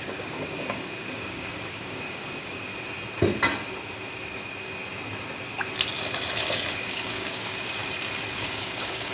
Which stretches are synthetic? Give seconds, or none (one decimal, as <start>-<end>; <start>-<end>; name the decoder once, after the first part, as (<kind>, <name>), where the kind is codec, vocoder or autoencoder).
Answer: 0.0-2.7 (codec, DAC); 6.7-7.8; 8.4-9.1